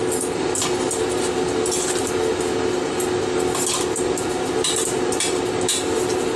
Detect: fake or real real